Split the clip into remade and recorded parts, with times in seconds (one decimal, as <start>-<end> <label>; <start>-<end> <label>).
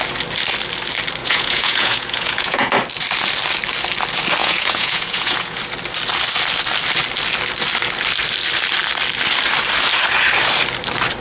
0.0-1.2 recorded; 1.2-2.7 remade; 2.7-4.4 recorded; 4.4-5.6 remade; 5.6-11.2 recorded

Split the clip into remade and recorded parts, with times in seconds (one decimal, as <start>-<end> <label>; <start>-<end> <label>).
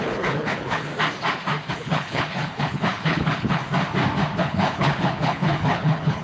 0.0-0.9 remade; 0.9-1.7 recorded; 1.7-3.6 remade; 3.6-4.4 recorded; 4.4-6.2 remade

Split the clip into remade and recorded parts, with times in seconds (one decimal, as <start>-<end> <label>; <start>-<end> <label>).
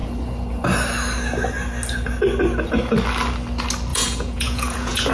0.0-3.9 recorded; 3.9-5.1 remade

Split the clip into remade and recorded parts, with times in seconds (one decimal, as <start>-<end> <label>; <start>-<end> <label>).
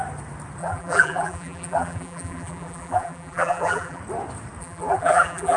0.0-0.6 recorded; 0.6-4.0 remade; 4.0-4.6 recorded; 4.6-5.6 remade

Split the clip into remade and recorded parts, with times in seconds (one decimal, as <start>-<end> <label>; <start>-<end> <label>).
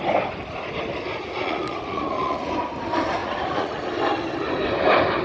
0.0-1.1 recorded; 1.1-2.5 remade; 2.5-3.2 recorded; 3.2-3.9 remade; 3.9-5.2 recorded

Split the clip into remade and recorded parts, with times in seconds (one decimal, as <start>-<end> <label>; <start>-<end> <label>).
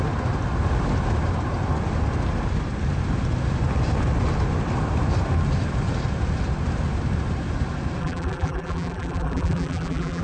0.0-8.0 recorded; 8.0-10.2 remade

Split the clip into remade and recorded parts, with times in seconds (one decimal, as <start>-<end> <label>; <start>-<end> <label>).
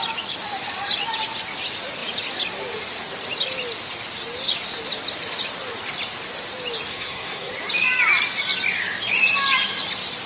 0.0-6.9 recorded; 6.9-7.5 remade; 7.5-10.3 recorded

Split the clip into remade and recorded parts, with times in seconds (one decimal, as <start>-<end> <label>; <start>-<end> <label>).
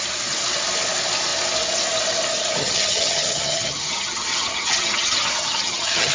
0.0-2.6 recorded; 2.6-6.1 remade